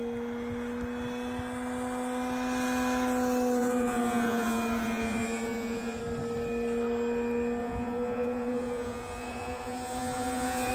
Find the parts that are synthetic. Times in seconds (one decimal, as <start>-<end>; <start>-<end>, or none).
3.6-6.0; 7.6-10.7